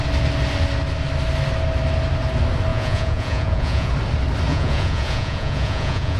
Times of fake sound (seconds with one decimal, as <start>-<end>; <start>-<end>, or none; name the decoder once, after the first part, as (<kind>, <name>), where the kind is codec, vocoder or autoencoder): 2.7-3.9 (vocoder, Vocos); 4.5-6.2